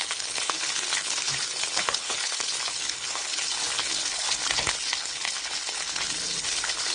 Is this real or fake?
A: fake